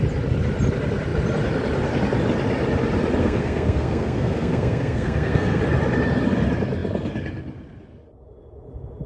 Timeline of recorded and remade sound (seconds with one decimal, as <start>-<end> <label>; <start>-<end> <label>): 0.0-3.2 recorded; 3.2-5.6 remade; 5.6-9.1 recorded